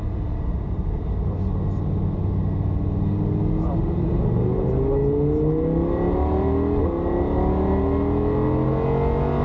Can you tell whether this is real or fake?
real